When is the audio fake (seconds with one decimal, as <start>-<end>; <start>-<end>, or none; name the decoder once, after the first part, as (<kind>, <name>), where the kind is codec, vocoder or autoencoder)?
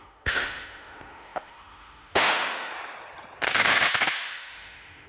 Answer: 0.0-2.7 (autoencoder, DAC-VAE); 3.5-5.1